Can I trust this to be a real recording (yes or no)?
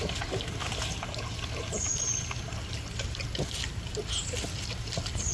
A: yes